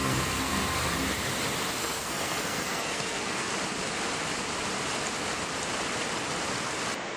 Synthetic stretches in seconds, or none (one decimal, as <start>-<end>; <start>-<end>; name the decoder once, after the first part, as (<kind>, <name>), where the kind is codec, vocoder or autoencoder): 0.0-0.9 (codec, SNAC); 1.8-3.5